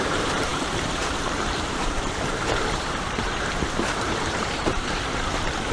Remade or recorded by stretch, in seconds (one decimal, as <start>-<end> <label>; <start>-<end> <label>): 0.0-5.7 remade